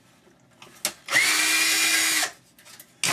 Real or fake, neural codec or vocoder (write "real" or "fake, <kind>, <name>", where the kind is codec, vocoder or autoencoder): real